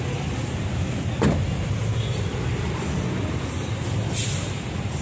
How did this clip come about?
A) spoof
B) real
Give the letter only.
B